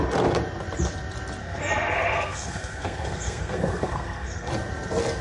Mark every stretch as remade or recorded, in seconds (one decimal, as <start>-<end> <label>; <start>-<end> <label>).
0.0-1.4 recorded; 1.4-4.5 remade; 4.5-5.2 recorded